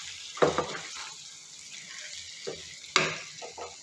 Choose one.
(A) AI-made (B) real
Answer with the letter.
B